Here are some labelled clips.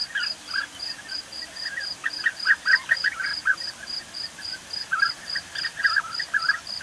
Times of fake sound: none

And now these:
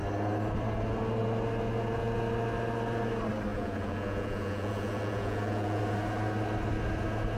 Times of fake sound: 3.5-5.8

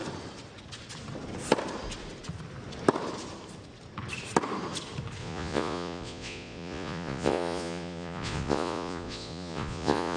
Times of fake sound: 5.2-10.2

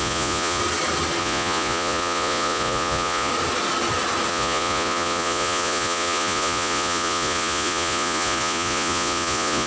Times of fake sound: 0.0-0.6; 1.2-3.3; 4.3-9.7

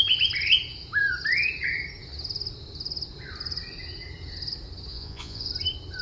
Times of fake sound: 4.9-5.5

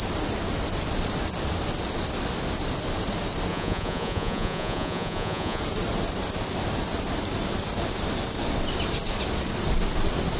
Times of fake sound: 3.5-5.6